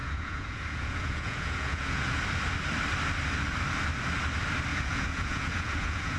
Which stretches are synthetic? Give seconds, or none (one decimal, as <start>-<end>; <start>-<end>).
0.0-2.2; 4.7-6.2